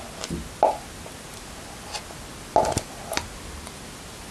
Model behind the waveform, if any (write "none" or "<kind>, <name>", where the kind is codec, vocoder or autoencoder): none